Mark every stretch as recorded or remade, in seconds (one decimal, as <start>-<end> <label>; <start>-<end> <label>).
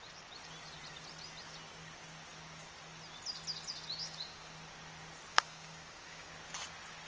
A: 0.0-5.3 recorded; 5.3-6.3 remade; 6.3-7.1 recorded